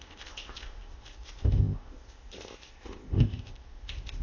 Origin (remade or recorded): remade